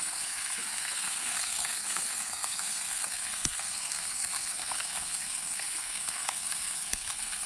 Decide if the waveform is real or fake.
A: fake